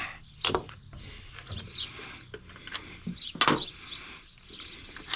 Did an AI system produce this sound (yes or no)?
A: no